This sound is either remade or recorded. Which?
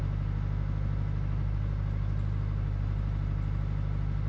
recorded